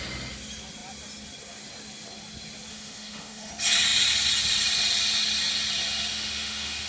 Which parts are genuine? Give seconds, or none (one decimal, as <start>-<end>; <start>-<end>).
0.0-2.7; 3.5-6.1